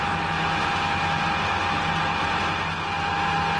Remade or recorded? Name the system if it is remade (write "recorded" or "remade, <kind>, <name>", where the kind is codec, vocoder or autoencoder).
recorded